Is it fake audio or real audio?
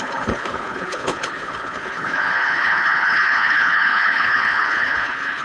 fake